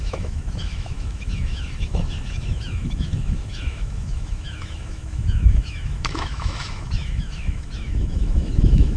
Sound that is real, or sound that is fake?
fake